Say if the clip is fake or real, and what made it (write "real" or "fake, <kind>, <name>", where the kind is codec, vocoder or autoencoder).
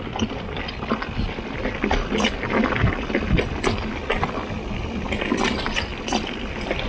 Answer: real